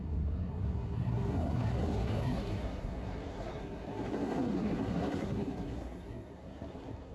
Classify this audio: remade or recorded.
remade